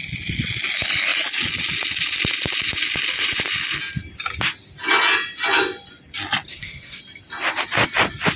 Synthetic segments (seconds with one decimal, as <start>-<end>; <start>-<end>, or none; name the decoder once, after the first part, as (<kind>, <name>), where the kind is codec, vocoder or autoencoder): 6.5-7.0 (codec, SNAC)